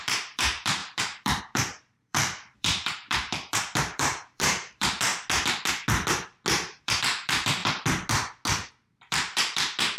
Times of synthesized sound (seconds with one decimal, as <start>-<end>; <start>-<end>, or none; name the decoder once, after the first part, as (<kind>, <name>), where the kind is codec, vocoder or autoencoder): 0.0-5.1 (vocoder, BigVGAN v2); 6.8-7.6; 8.7-10.0

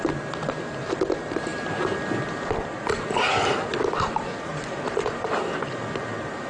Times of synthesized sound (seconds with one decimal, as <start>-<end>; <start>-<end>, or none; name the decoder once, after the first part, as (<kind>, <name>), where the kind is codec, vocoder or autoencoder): 4.5-5.3 (vocoder, BigVGAN v2)

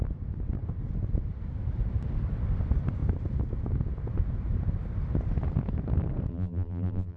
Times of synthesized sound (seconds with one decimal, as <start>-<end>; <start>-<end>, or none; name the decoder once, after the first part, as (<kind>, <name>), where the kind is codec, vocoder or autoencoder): 6.3-7.2 (vocoder, BigVGAN v2)

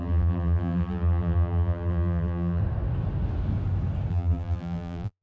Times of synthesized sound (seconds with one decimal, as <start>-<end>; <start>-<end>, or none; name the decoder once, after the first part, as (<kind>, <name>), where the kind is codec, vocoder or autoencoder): 0.0-2.6 (vocoder, BigVGAN v2); 4.1-5.2